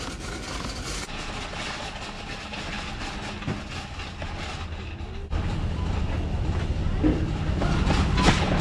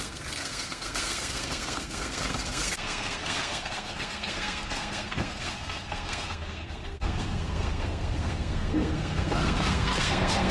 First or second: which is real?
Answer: first